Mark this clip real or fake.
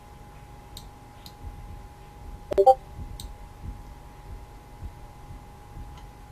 real